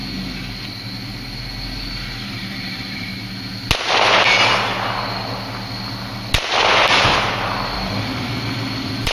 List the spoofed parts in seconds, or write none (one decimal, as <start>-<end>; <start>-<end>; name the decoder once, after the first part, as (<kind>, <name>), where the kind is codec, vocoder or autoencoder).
2.3-3.1 (vocoder, BigVGAN v2); 7.3-9.1